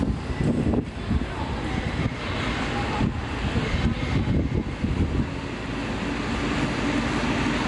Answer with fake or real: real